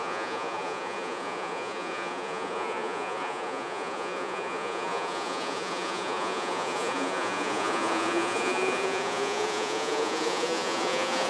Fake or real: fake